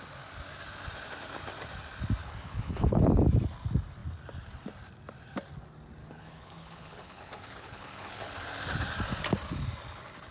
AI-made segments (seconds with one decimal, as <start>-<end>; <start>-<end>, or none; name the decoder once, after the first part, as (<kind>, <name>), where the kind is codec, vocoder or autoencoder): 2.2-3.0 (codec, HILCodec); 6.0-8.3